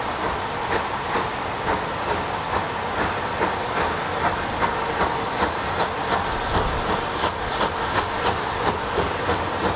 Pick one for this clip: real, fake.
real